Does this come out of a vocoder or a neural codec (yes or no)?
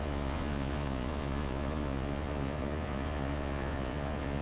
yes